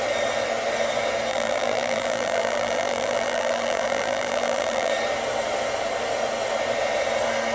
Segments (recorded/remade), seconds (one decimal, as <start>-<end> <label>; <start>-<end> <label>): 0.0-1.3 recorded; 1.3-4.9 remade; 4.9-7.5 recorded